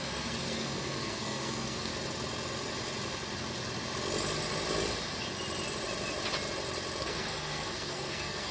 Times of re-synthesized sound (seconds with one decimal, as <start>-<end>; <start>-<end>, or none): 0.0-1.9; 7.0-8.5